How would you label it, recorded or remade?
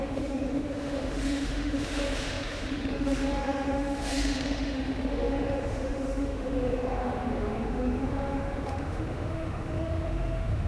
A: remade